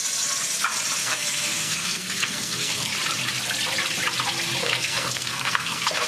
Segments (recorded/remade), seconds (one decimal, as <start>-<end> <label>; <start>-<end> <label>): 0.0-1.0 recorded; 1.0-2.9 remade; 2.9-4.6 recorded; 4.6-6.1 remade